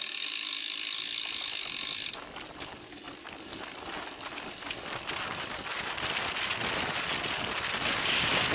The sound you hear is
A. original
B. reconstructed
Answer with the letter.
A